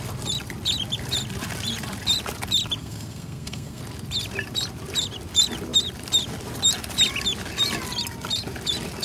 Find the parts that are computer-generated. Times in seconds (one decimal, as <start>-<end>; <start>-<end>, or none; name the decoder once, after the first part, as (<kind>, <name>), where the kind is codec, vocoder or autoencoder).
2.8-3.8 (codec, SNAC)